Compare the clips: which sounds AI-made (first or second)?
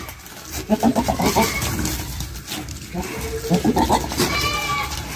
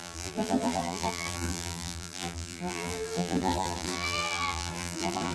second